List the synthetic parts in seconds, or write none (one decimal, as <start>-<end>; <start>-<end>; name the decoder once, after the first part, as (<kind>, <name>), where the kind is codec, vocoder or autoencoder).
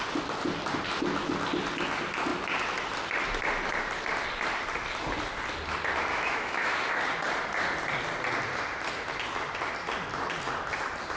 6.1-6.9 (autoencoder, DAC-VAE)